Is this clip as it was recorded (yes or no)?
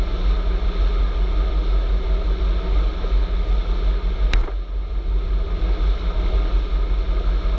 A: yes